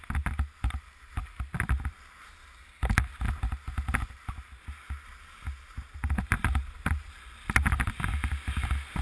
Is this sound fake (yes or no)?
no